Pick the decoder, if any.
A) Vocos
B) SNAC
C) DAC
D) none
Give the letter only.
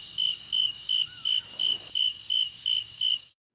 C